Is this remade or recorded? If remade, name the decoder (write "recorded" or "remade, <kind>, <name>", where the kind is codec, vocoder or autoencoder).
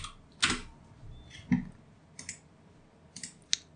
recorded